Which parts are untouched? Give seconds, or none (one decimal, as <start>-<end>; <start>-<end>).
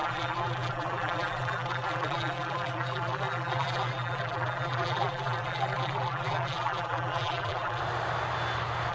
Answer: 7.8-8.9